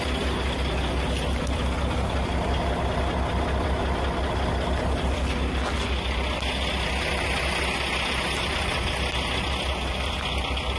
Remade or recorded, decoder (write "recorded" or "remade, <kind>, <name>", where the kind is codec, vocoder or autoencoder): recorded